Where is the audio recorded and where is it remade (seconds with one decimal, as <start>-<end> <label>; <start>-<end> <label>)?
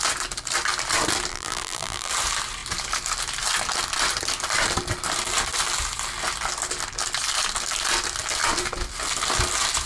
0.0-1.3 recorded; 1.3-2.1 remade; 2.1-9.9 recorded